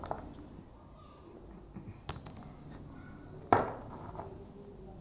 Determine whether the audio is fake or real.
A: real